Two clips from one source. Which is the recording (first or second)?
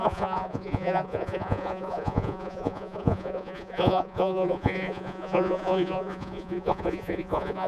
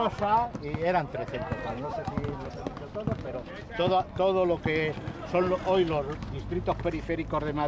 second